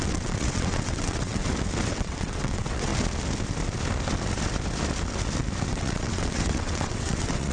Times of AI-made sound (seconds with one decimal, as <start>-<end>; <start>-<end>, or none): 0.0-1.4; 1.9-2.9; 5.7-7.5

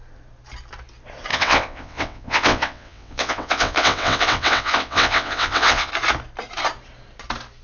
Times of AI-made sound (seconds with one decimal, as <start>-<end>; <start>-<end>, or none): 1.3-5.9

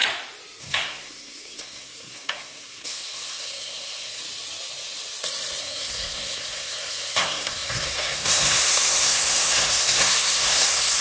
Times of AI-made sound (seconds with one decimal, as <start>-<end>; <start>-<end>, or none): 0.6-4.2; 5.6-11.0

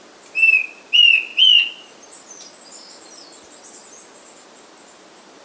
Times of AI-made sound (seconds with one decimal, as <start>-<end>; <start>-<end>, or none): none